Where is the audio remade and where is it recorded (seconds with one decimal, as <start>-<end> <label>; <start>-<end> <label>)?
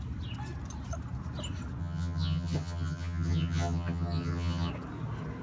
0.0-1.8 recorded; 1.8-4.7 remade; 4.7-5.4 recorded